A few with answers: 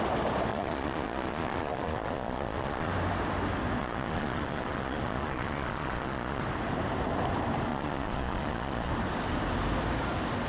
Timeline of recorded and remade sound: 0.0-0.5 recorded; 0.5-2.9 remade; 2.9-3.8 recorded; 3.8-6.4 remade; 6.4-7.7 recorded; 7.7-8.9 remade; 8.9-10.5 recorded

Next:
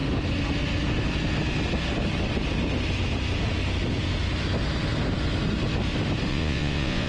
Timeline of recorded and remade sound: 0.0-6.3 recorded; 6.3-7.1 remade